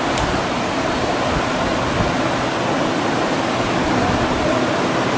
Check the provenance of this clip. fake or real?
real